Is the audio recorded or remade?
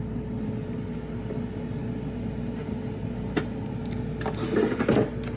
recorded